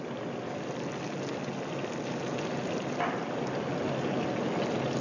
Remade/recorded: recorded